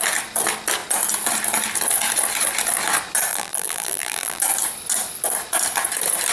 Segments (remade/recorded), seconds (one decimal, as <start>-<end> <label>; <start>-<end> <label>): 0.0-3.3 recorded; 3.3-4.4 remade; 4.4-6.3 recorded